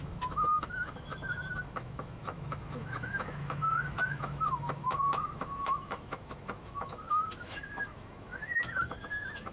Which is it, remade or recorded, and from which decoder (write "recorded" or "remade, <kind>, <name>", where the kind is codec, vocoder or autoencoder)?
remade, autoencoder, DAC-VAE